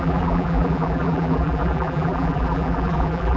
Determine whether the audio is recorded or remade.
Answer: remade